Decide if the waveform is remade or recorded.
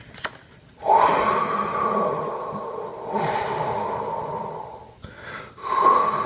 recorded